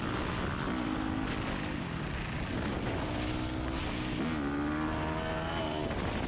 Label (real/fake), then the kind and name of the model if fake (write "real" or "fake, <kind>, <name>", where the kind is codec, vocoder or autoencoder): real